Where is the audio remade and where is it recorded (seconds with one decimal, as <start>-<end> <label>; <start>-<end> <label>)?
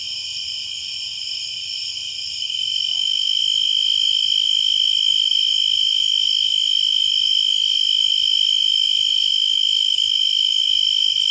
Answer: 0.0-2.9 recorded; 2.9-3.4 remade; 3.4-9.3 recorded; 9.3-10.6 remade; 10.6-11.3 recorded